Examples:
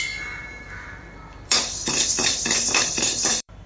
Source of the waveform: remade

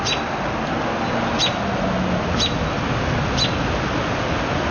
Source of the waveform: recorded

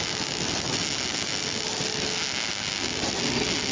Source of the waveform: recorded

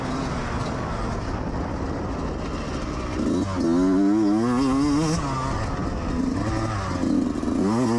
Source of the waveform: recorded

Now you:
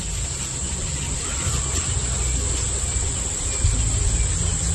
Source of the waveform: recorded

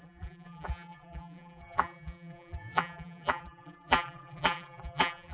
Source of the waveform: remade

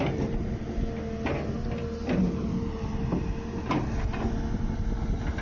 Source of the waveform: recorded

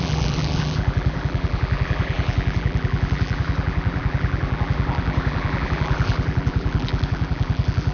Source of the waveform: remade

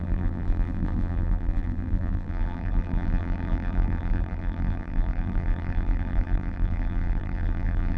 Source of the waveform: remade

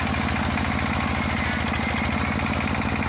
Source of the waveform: recorded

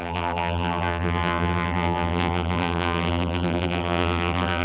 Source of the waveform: remade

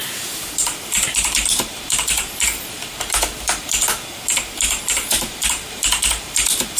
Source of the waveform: remade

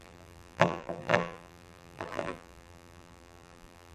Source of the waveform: remade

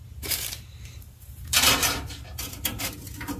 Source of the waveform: remade